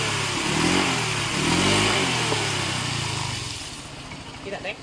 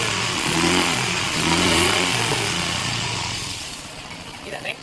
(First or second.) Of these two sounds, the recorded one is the first